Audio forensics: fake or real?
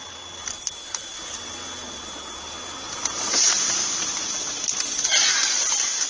real